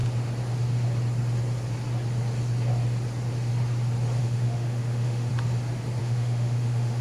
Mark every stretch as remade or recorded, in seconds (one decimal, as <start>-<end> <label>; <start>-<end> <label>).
0.0-4.2 recorded; 4.2-5.3 remade; 5.3-6.0 recorded; 6.0-7.0 remade